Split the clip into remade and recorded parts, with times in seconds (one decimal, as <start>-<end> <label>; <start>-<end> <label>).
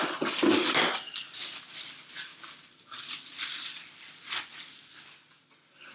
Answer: 0.0-5.9 recorded